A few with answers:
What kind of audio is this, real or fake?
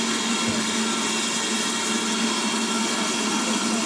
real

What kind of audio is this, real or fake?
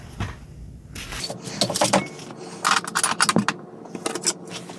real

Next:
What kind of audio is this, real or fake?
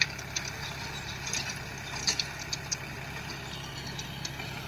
real